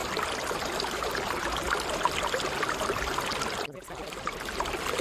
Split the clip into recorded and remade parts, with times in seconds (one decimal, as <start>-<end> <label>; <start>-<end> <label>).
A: 0.0-5.0 recorded